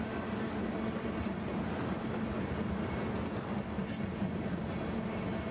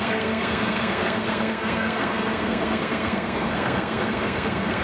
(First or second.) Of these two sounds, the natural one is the first